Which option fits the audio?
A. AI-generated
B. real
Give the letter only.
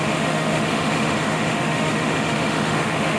A